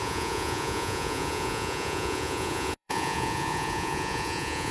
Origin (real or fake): fake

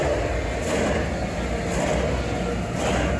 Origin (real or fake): real